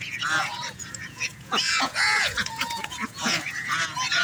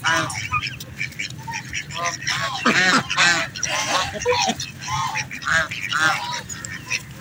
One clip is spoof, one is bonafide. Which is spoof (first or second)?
first